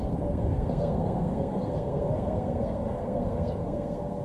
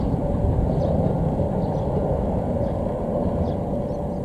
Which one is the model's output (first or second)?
first